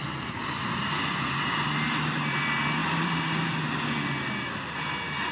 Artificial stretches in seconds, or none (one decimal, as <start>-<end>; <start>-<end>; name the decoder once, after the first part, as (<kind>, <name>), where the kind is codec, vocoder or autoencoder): 2.8-3.6 (vocoder, BigVGAN v2)

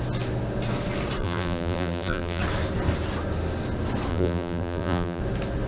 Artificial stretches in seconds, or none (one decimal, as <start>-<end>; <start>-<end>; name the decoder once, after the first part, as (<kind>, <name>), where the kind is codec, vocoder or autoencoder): 1.2-2.4 (vocoder, BigVGAN v2); 4.1-5.2

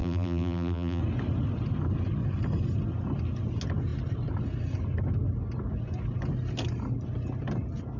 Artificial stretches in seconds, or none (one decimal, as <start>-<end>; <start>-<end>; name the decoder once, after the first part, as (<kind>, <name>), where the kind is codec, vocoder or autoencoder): 0.0-1.0 (vocoder, BigVGAN v2)